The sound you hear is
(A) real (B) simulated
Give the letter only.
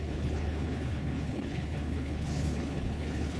B